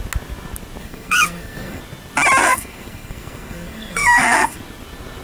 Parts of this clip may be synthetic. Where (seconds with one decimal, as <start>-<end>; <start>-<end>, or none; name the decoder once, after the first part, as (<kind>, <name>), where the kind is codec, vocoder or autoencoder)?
0.8-1.8 (codec, SNAC); 2.4-4.6